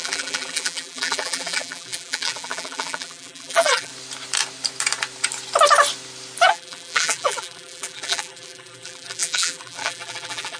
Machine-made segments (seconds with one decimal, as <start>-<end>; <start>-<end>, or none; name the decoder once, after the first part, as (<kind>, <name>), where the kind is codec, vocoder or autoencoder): 0.0-3.9 (vocoder, BigVGAN v2); 6.5-10.6